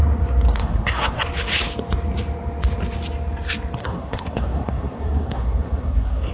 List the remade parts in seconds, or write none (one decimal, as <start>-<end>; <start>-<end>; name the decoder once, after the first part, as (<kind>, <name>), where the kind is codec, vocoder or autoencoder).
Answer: 0.6-1.2 (codec, SNAC); 3.8-6.3